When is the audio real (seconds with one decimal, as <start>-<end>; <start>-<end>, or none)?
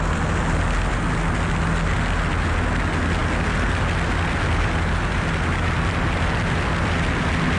0.0-7.6